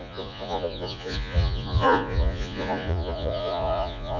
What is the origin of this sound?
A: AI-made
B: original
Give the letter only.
A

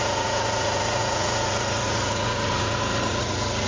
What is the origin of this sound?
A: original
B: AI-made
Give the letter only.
B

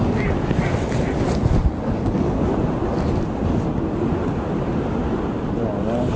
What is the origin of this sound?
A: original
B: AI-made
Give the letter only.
A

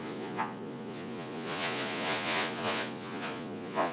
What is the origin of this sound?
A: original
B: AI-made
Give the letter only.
B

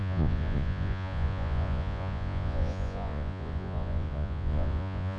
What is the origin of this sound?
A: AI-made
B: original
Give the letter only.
A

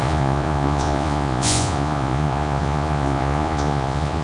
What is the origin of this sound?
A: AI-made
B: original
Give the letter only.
A